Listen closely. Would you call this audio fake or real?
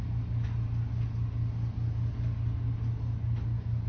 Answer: real